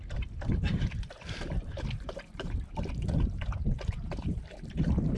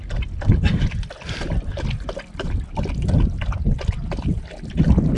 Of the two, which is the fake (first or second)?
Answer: first